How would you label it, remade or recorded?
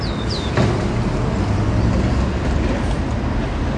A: recorded